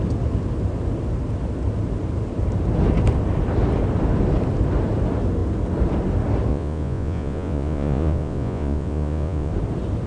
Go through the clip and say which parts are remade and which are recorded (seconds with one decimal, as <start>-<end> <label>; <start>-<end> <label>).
0.0-6.5 recorded; 6.5-9.5 remade; 9.5-10.1 recorded